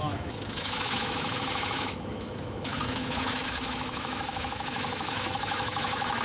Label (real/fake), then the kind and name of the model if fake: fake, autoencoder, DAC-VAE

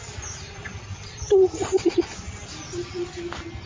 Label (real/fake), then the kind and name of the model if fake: real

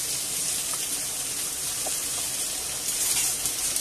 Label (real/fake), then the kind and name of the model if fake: real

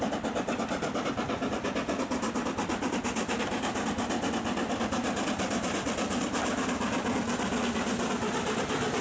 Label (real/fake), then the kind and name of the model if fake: real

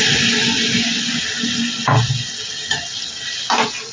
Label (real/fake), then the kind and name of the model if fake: real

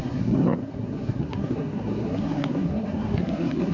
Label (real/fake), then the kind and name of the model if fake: fake, codec, SNAC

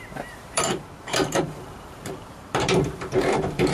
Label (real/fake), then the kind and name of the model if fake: fake, vocoder, BigVGAN v2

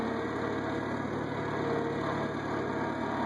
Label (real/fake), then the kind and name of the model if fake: real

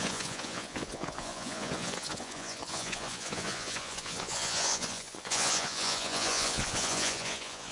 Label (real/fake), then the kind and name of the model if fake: fake, vocoder, Vocos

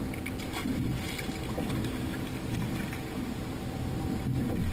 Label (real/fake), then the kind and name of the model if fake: real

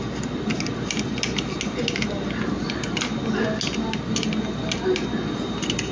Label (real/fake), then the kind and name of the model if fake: real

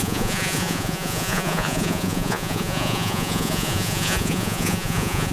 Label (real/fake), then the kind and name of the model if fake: fake, vocoder, Vocos